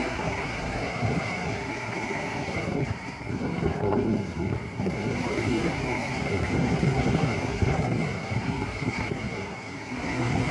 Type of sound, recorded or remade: remade